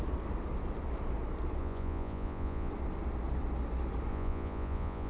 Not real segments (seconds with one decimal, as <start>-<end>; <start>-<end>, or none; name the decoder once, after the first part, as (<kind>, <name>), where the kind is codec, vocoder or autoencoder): 1.6-2.7 (vocoder, Vocos); 4.1-5.1